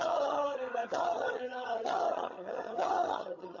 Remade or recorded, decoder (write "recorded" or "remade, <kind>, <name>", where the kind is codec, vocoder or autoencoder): remade, vocoder, HiFi-GAN